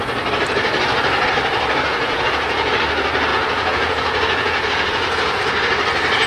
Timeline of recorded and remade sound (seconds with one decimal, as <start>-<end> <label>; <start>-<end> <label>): 0.0-1.9 recorded; 1.9-2.7 remade; 2.7-3.3 recorded; 3.3-5.4 remade; 5.4-6.3 recorded